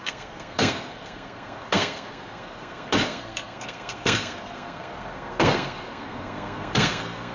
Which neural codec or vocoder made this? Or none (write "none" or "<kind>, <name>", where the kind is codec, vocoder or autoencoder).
codec, SNAC